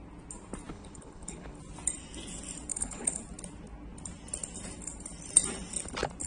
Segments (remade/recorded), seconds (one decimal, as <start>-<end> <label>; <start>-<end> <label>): 0.0-0.7 recorded; 0.7-1.6 remade; 1.6-2.7 recorded; 2.7-3.2 remade; 3.2-6.3 recorded